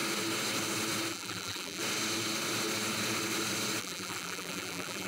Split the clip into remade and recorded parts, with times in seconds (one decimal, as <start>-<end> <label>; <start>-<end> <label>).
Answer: 0.0-1.1 recorded; 1.1-1.8 remade; 1.8-3.8 recorded; 3.8-5.1 remade

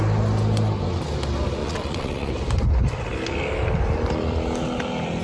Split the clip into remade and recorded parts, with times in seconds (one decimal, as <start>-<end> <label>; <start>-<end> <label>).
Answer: 0.0-1.6 recorded; 1.6-2.3 remade; 2.3-5.2 recorded

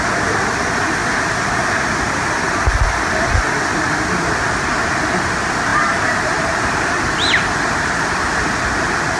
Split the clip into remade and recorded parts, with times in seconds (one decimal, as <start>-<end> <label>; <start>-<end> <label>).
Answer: 0.0-9.2 recorded

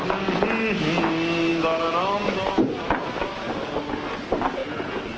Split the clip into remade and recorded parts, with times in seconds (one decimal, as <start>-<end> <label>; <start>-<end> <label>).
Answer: 0.0-5.2 recorded